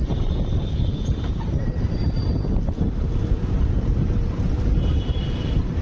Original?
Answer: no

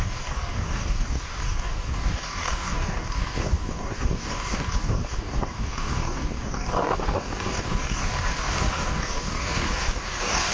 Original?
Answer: no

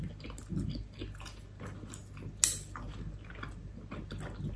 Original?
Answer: yes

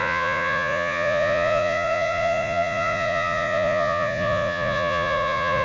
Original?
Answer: no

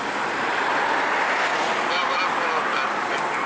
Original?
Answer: yes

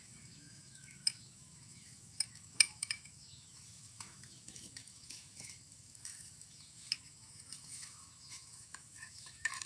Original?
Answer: no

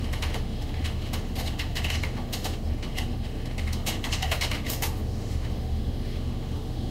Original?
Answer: no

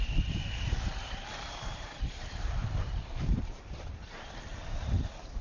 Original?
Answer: no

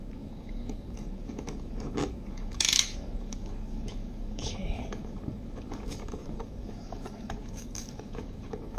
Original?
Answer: no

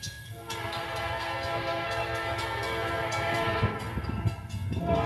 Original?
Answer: no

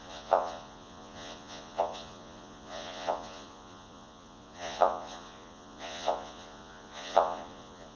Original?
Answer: no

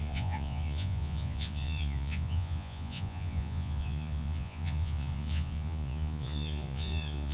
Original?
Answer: no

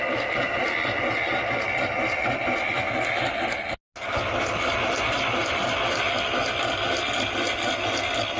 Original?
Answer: yes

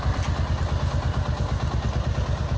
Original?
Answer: no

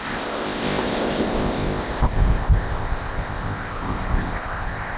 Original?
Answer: no